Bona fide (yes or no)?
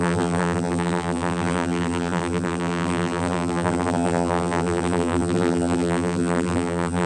no